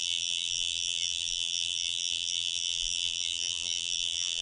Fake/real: fake